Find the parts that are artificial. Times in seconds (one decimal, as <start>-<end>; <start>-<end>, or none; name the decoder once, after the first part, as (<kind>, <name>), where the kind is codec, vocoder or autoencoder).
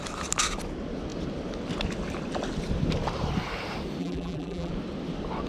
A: 4.0-4.7 (vocoder, BigVGAN v2)